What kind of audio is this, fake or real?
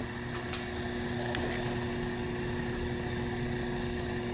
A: real